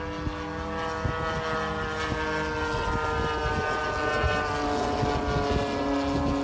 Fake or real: real